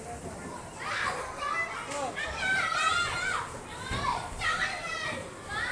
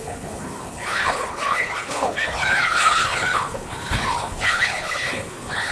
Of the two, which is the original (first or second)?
first